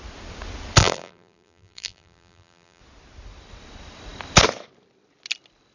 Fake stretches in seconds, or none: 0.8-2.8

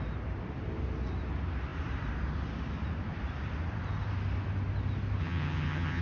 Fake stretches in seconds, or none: 5.2-6.0